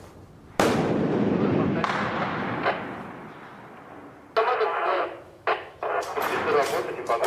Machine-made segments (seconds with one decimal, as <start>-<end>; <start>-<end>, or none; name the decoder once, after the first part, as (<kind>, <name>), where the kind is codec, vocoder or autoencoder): 4.7-5.7 (autoencoder, DAC-VAE)

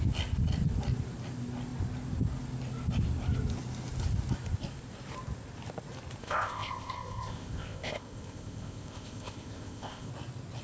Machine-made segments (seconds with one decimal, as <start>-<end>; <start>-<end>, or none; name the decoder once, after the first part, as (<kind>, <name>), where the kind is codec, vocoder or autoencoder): 6.2-10.1 (codec, ZipCodec)

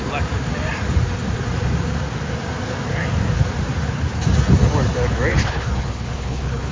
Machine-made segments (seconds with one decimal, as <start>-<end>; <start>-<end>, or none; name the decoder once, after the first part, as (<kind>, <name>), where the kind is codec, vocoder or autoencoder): 5.3-6.7 (codec, HILCodec)

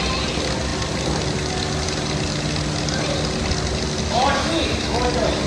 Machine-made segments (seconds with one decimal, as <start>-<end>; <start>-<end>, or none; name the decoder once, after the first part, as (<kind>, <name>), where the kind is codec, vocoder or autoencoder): 4.4-5.0 (autoencoder, DAC-VAE)

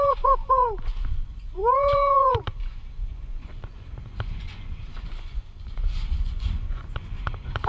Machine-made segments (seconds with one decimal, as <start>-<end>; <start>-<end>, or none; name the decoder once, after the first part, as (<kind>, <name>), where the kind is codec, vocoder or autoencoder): 0.0-7.7 (vocoder, Vocos)

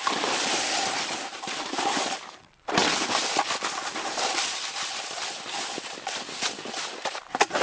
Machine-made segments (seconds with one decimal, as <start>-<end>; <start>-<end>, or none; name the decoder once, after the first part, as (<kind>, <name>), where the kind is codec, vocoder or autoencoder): 0.0-2.8 (vocoder, BigVGAN v2); 6.8-7.6